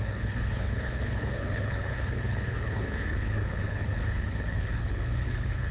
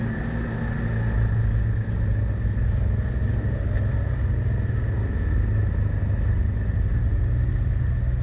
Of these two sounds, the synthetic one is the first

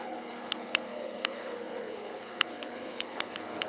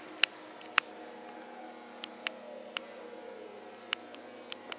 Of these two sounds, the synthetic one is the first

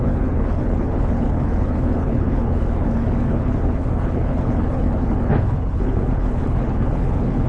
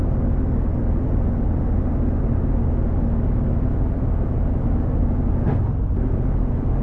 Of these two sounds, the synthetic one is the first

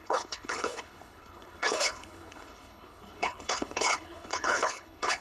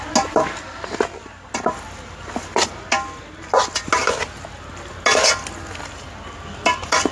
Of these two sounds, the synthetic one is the first